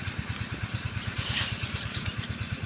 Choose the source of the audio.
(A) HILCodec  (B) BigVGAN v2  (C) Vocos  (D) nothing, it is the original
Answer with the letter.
B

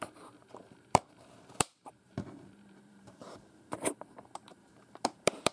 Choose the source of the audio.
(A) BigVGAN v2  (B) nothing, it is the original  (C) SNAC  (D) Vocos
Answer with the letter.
A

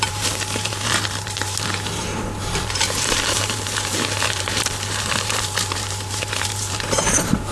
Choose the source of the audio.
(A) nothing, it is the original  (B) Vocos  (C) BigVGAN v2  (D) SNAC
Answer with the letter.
C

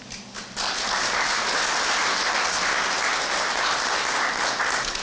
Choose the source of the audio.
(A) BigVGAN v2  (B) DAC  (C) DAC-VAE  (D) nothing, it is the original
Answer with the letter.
D